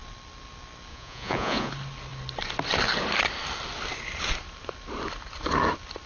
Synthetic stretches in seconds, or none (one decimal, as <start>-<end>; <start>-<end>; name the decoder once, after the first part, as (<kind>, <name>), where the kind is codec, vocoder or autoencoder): 0.9-1.7 (vocoder, Vocos)